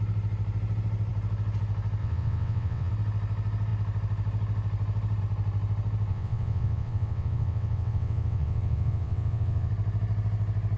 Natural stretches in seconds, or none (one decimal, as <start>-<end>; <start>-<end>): 0.0-2.0; 2.9-6.1; 9.7-10.8